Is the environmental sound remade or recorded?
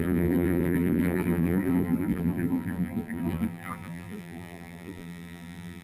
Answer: remade